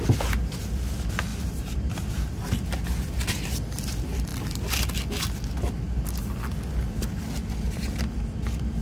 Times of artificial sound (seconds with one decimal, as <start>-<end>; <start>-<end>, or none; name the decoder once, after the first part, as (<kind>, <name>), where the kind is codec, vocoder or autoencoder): 1.3-2.3 (vocoder, BigVGAN v2)